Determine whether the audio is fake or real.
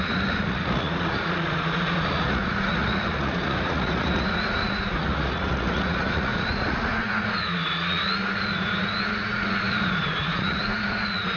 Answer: fake